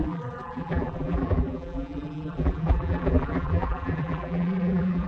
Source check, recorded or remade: remade